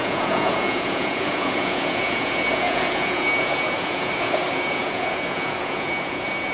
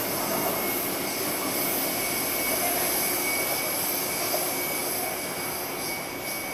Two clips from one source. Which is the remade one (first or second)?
first